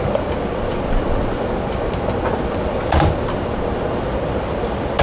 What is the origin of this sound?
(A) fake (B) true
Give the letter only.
B